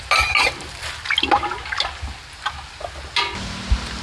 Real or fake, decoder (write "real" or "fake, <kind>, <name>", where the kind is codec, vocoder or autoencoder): real